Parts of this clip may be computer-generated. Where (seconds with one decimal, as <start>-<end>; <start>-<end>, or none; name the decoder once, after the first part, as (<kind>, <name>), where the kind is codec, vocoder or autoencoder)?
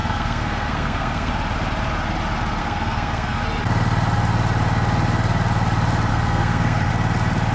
0.0-1.3 (codec, SNAC); 2.6-3.4; 6.1-6.9